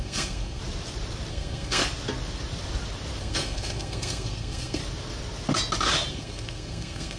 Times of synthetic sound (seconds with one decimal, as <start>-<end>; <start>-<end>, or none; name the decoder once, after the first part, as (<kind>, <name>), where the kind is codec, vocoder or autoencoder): 0.0-0.6 (codec, SNAC); 1.3-1.8; 3.2-4.8; 6.1-7.2